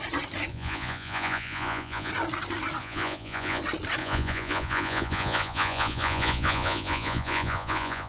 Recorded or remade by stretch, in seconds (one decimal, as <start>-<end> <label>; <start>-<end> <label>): 0.0-0.5 recorded; 0.5-2.1 remade; 2.1-2.8 recorded; 2.8-3.6 remade; 3.6-4.0 recorded; 4.0-8.1 remade